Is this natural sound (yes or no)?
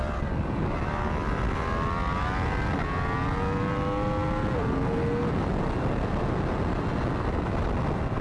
yes